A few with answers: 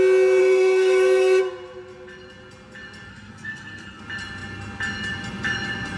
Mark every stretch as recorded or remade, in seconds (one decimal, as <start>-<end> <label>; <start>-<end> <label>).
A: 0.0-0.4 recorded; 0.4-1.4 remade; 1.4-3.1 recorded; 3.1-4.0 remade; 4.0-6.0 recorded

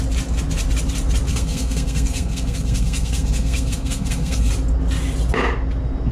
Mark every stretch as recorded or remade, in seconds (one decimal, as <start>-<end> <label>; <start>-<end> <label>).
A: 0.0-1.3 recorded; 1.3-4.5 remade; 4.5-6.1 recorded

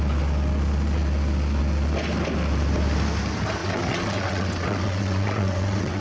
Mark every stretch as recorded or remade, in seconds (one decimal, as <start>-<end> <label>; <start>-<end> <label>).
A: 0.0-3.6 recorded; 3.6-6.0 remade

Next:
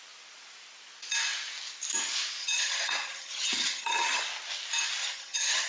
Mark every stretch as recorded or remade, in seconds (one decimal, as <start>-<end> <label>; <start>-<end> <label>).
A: 0.0-2.4 recorded; 2.4-4.2 remade; 4.2-5.0 recorded; 5.0-5.7 remade